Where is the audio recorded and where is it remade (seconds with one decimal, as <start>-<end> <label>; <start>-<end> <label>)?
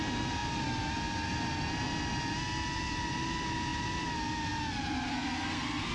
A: 0.0-5.1 recorded; 5.1-5.9 remade